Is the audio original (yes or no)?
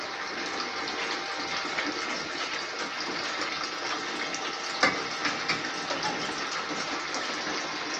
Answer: yes